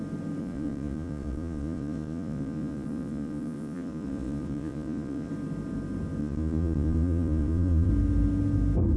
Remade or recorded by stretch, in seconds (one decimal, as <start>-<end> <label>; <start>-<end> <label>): 0.0-0.4 recorded; 0.4-5.3 remade; 5.3-6.2 recorded; 6.2-7.9 remade; 7.9-9.0 recorded